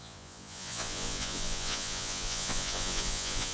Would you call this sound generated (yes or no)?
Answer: yes